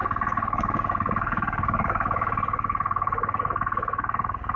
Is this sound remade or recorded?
remade